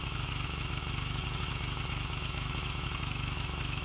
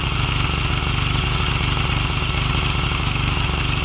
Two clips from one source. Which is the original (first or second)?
second